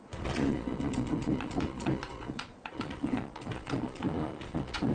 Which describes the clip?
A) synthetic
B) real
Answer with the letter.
A